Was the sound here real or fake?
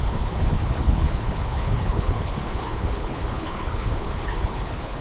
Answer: fake